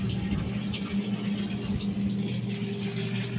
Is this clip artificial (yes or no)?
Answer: no